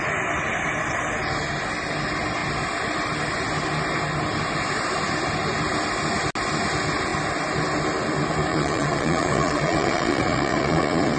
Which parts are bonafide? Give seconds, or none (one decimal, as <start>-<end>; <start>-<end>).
0.0-8.5